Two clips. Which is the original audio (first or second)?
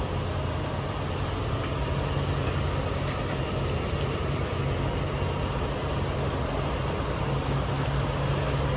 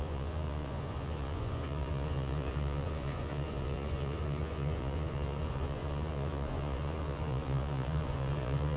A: first